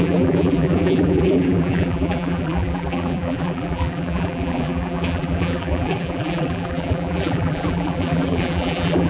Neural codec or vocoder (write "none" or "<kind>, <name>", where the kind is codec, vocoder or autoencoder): vocoder, BigVGAN v2